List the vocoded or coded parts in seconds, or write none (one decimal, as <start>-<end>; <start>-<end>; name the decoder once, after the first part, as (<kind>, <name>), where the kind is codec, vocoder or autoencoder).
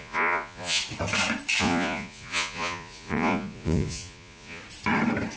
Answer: 0.0-0.8 (vocoder, Vocos); 1.6-4.6